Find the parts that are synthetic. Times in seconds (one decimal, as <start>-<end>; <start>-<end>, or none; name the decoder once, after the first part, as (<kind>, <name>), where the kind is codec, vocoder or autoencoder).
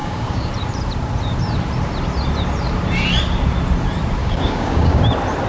0.0-0.5 (codec, DAC); 4.2-5.0